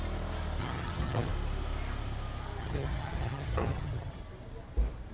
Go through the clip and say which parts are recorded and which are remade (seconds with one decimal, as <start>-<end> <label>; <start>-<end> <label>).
0.0-0.6 recorded; 0.6-1.3 remade; 1.3-2.6 recorded; 2.6-4.2 remade; 4.2-5.1 recorded